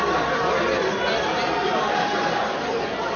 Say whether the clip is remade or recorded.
recorded